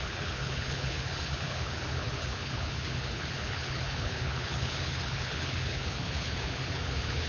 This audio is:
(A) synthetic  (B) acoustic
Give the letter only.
A